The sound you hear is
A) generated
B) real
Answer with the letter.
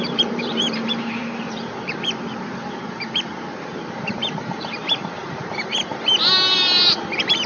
A